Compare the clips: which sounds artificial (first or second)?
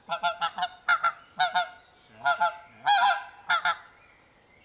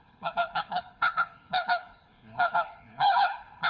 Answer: second